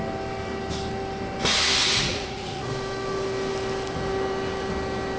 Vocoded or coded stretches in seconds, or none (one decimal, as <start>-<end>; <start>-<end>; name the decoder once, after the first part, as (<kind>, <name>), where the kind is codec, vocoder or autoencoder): 1.8-2.7 (vocoder, Vocos)